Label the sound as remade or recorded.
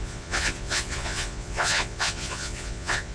remade